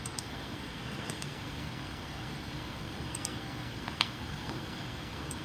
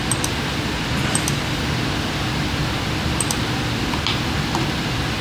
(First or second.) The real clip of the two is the second